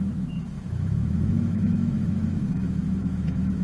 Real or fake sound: fake